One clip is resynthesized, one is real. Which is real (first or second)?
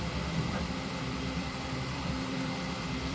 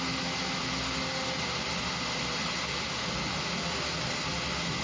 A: second